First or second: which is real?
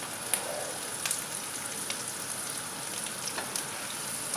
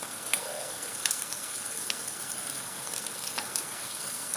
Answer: first